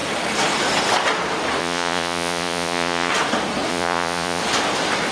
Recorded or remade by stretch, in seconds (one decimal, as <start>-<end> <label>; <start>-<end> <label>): 0.0-1.6 recorded; 1.6-3.1 remade; 3.1-3.7 recorded; 3.7-4.4 remade; 4.4-5.1 recorded